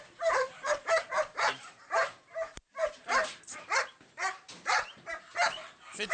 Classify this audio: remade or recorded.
remade